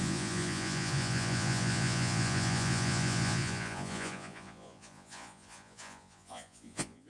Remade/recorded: remade